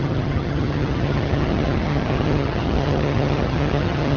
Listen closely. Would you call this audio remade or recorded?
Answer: remade